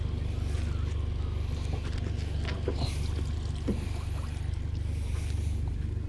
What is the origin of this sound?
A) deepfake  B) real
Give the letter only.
B